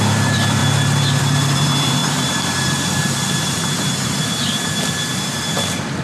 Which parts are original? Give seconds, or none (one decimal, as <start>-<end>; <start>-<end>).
0.6-1.2